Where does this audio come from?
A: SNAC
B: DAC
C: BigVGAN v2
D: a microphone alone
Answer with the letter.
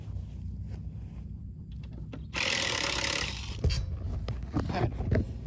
D